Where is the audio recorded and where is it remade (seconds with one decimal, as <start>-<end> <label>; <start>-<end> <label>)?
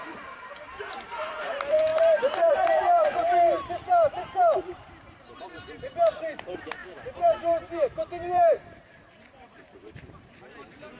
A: 0.0-1.9 remade; 1.9-2.5 recorded; 2.5-11.0 remade